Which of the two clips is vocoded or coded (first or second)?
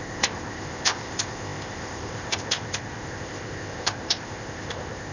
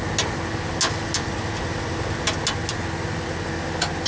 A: first